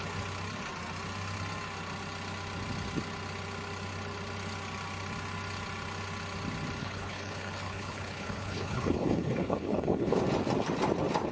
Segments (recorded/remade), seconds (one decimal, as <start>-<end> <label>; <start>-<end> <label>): 0.0-6.8 recorded; 6.8-10.2 remade; 10.2-11.3 recorded